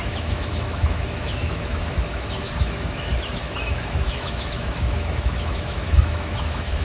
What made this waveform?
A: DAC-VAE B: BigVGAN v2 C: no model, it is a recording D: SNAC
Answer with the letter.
A